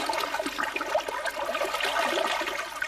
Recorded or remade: recorded